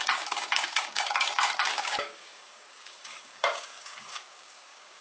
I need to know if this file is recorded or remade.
remade